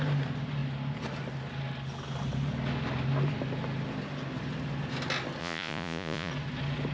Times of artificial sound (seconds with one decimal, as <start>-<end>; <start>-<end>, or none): 5.4-6.3